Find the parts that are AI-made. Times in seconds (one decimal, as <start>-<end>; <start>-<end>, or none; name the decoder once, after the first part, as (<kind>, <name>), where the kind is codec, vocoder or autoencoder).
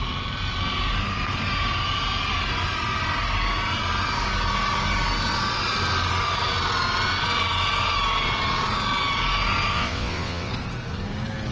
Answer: 9.7-10.5 (vocoder, WaveNeXt)